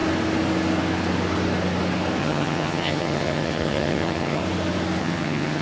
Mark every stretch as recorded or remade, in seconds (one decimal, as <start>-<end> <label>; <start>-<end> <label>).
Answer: 0.0-2.2 recorded; 2.2-4.4 remade; 4.4-5.0 recorded; 5.0-5.6 remade